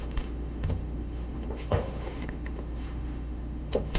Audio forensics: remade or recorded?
remade